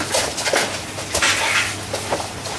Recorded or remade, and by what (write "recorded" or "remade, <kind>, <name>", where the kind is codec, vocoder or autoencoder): recorded